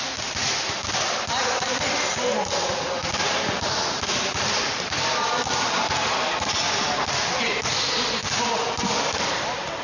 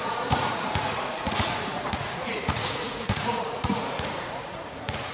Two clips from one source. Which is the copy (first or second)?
second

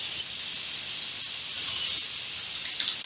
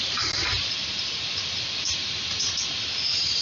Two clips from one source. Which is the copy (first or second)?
second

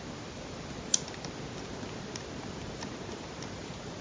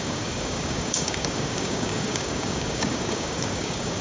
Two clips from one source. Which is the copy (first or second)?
second